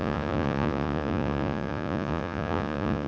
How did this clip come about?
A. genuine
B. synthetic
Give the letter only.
B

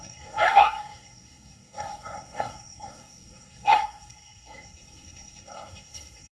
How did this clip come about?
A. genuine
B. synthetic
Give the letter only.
B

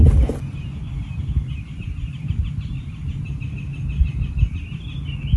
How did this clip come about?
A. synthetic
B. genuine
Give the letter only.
B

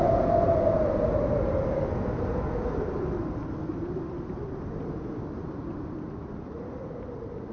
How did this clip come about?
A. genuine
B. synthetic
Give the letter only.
A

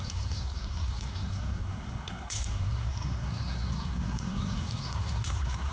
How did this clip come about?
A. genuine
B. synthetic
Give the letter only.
B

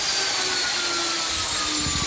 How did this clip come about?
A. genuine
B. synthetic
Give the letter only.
A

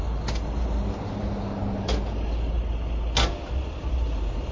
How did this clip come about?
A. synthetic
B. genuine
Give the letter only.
B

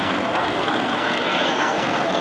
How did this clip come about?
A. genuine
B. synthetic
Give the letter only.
B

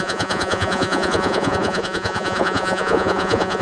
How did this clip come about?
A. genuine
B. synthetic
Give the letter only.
B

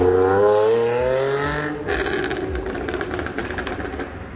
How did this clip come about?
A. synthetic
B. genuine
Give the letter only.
B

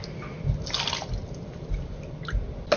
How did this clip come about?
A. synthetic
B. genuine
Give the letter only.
B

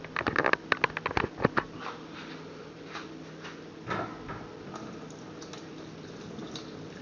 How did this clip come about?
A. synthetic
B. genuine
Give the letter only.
B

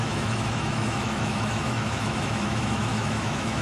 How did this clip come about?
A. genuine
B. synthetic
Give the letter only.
B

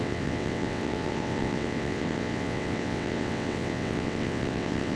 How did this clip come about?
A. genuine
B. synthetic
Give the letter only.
B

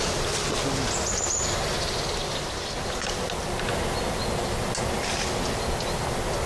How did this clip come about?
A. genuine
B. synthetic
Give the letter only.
A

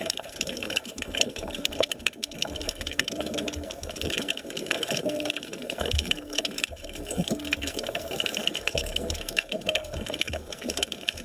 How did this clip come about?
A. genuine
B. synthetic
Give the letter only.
B